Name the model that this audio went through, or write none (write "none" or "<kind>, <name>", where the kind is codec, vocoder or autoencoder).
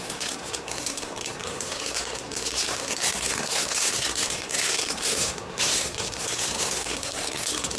codec, SNAC